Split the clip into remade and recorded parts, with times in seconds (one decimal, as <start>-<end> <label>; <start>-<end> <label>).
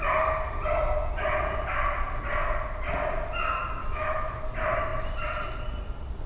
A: 0.0-3.8 recorded; 3.8-4.4 remade; 4.4-6.3 recorded